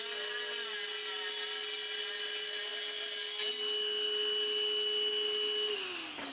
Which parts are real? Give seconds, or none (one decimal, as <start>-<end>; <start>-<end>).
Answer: 0.0-6.3